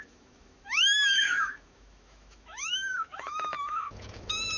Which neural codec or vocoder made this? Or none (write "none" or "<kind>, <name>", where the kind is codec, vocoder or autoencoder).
autoencoder, DAC-VAE